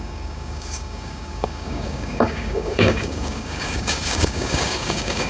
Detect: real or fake fake